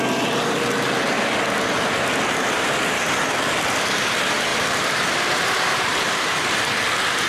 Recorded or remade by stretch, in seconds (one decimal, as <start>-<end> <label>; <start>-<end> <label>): 0.0-4.5 recorded; 4.5-6.5 remade; 6.5-7.3 recorded